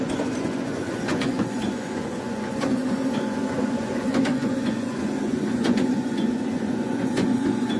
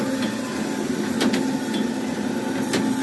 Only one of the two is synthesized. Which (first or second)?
first